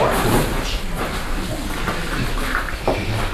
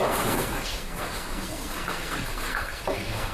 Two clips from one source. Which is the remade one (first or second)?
second